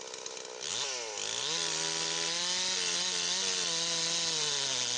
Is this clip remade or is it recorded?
recorded